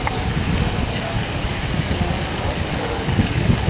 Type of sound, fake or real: fake